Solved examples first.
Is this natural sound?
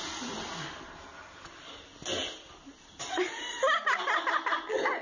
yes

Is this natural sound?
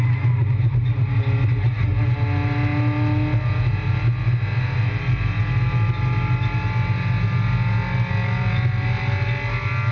yes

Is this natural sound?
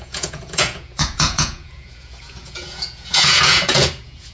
no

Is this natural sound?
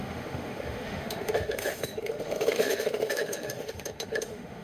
no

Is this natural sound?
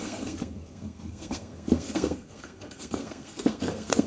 no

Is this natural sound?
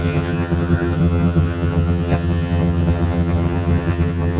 no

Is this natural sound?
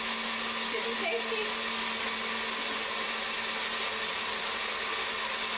yes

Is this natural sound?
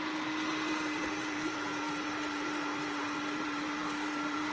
no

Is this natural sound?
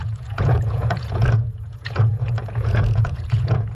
no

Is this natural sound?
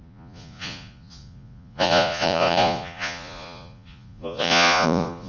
no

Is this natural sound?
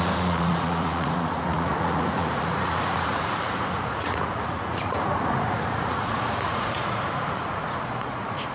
no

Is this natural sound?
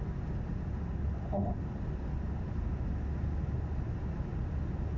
yes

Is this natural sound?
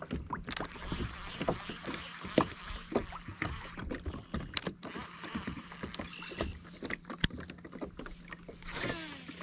yes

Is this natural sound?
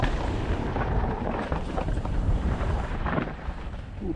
no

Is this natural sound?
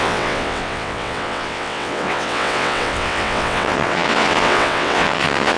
no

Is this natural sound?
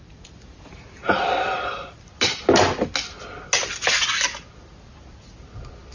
yes